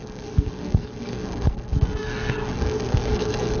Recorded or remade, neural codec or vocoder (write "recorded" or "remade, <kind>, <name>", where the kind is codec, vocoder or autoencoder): remade, codec, SNAC